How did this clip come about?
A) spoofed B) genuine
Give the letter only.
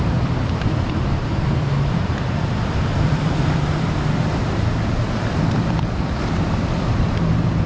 A